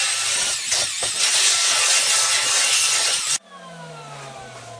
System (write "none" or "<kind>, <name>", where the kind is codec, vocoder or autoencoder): none